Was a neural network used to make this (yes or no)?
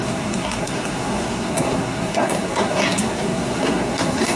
yes